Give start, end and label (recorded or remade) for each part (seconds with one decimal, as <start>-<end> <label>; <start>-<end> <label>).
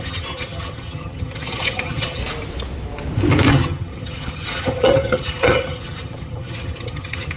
0.0-2.2 remade; 2.2-3.5 recorded; 3.5-7.4 remade